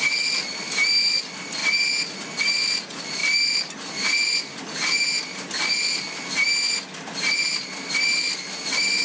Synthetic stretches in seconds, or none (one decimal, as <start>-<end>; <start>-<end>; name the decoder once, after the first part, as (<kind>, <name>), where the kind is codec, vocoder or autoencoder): none